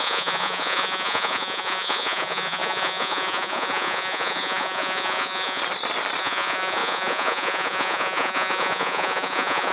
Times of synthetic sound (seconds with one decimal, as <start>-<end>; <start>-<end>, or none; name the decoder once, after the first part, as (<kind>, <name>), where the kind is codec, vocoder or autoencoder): 0.0-5.6 (vocoder, Vocos); 6.2-9.7